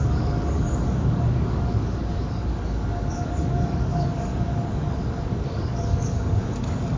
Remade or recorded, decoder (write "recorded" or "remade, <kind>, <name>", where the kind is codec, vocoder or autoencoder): remade, codec, DAC